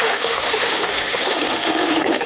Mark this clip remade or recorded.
remade